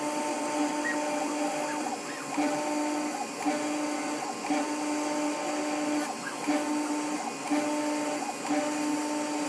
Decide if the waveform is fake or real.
real